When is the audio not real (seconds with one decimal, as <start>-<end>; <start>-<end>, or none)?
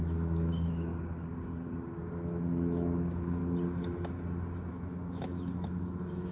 0.0-0.9; 2.1-3.4; 4.7-6.3